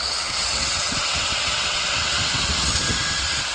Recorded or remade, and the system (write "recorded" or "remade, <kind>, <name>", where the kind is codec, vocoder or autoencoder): remade, vocoder, WaveNeXt